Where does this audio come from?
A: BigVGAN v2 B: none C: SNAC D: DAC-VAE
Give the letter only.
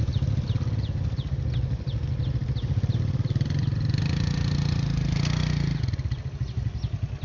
B